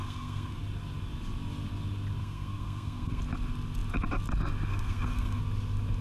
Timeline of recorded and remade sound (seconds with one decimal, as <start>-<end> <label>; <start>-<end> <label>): 0.0-0.6 remade; 0.6-2.2 recorded; 2.2-3.2 remade; 3.2-4.7 recorded; 4.7-5.4 remade; 5.4-6.0 recorded